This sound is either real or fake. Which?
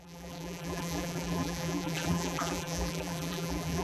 fake